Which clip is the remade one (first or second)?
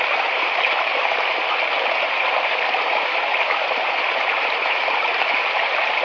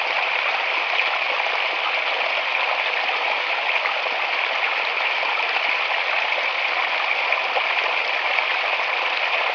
first